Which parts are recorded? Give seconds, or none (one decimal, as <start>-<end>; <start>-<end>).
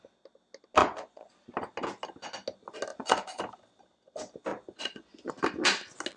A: 0.0-0.8; 1.3-2.9; 3.4-4.5; 5.3-6.2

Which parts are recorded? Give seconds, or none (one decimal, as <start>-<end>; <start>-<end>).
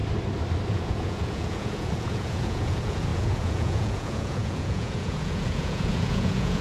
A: 0.0-0.7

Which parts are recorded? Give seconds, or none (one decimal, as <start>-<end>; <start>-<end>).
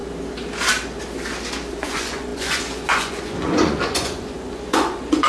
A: 0.0-1.7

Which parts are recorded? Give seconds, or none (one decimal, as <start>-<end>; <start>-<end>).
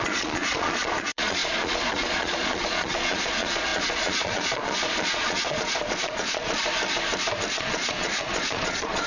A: 6.6-7.5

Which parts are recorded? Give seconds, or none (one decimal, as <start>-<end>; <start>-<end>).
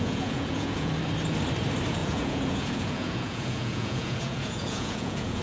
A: 0.9-2.0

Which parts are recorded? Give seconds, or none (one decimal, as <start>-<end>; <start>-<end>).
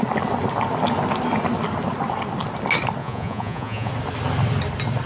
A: 0.0-3.0; 3.9-5.1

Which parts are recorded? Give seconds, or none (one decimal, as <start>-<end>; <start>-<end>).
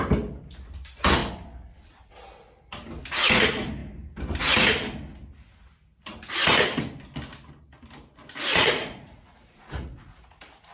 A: 0.0-8.5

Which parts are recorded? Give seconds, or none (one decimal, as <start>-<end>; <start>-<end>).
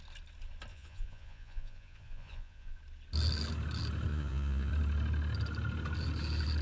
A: 0.0-0.7; 2.8-4.1; 4.7-6.6